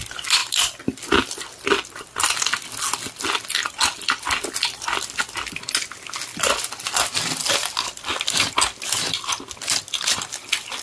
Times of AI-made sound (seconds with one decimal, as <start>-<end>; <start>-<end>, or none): none